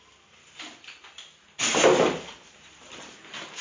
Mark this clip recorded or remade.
recorded